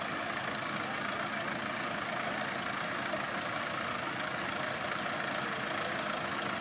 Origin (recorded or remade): recorded